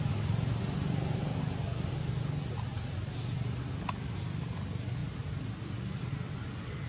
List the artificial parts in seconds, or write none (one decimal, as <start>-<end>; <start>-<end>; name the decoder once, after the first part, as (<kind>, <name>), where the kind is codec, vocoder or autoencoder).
none